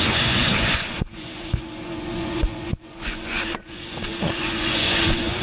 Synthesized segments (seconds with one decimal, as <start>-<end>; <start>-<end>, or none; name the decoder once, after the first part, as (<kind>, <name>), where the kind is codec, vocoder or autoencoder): 0.0-5.4 (vocoder, Vocos)